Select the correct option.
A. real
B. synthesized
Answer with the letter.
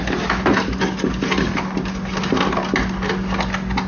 A